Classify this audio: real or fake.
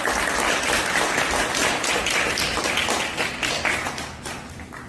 real